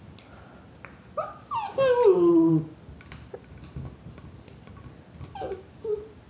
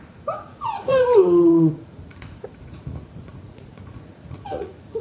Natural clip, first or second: first